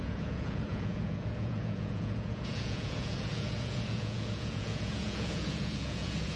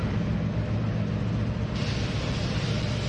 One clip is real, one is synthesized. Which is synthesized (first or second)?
first